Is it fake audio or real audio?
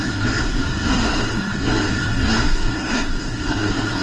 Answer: fake